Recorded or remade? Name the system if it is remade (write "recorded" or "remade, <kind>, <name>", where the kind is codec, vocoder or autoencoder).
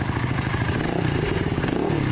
remade, codec, DAC